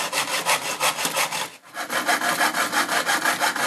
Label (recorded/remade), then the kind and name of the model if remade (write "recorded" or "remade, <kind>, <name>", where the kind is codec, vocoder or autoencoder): recorded